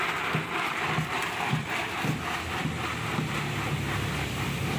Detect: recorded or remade recorded